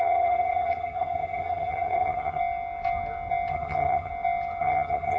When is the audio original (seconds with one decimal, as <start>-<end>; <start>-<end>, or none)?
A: 2.4-3.5; 4.1-4.6